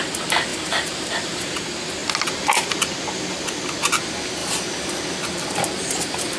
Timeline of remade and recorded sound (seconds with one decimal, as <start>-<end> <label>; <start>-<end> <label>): 0.0-0.5 recorded; 0.5-1.6 remade; 1.6-4.4 recorded; 4.4-4.9 remade; 4.9-6.4 recorded